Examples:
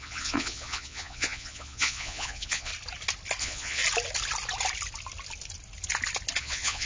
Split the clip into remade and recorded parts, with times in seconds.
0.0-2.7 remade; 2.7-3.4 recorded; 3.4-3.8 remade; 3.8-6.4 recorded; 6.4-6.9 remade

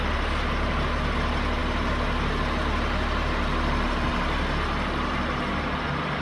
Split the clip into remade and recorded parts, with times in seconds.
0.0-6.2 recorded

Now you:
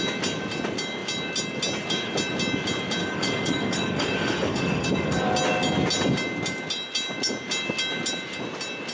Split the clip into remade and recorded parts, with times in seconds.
0.0-3.0 recorded; 3.0-5.2 remade; 5.2-8.9 recorded

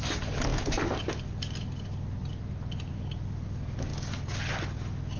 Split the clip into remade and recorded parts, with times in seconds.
0.0-5.2 recorded

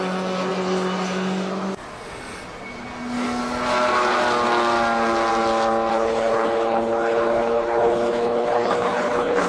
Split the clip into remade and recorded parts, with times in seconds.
0.0-5.9 recorded; 5.9-9.5 remade

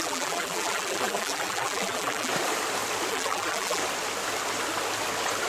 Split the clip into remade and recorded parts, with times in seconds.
0.0-2.3 remade; 2.3-3.1 recorded; 3.1-3.8 remade; 3.8-5.5 recorded

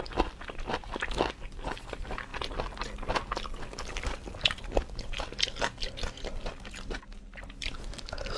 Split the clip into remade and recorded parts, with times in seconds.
0.0-8.4 recorded

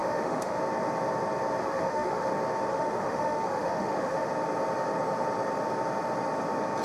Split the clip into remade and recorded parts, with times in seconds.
0.0-0.6 remade; 0.6-1.6 recorded; 1.6-2.3 remade; 2.3-2.7 recorded; 2.7-4.3 remade; 4.3-6.8 recorded